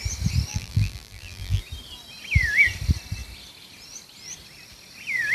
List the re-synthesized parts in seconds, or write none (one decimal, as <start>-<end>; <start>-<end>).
0.5-1.6